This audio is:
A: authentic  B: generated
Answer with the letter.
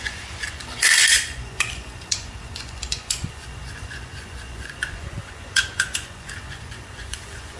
B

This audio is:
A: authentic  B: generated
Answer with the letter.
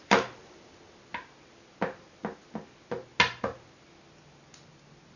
A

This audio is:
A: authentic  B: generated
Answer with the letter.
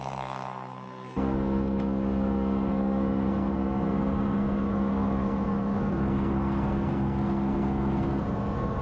B